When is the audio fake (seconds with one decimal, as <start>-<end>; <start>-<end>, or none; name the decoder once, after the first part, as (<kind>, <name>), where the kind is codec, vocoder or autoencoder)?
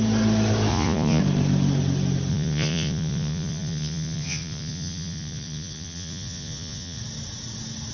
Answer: 0.7-1.2 (vocoder, Vocos); 2.3-7.0